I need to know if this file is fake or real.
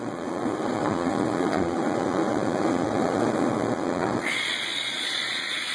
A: fake